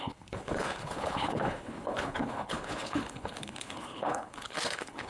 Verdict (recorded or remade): remade